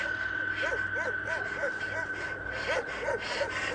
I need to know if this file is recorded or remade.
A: recorded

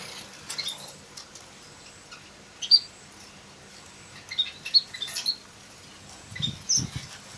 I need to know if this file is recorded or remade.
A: recorded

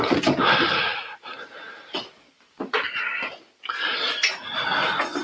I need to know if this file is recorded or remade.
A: recorded